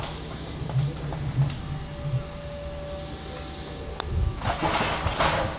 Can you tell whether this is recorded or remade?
recorded